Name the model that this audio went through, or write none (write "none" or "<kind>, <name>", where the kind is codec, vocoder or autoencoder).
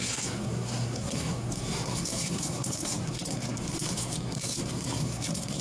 codec, SNAC